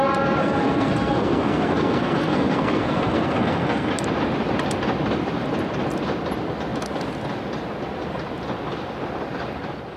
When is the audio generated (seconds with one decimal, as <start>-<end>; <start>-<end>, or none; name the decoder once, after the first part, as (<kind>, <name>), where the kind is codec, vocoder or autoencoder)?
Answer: 0.4-3.9 (codec, SNAC)